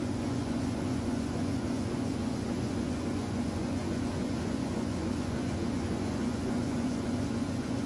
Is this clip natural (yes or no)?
no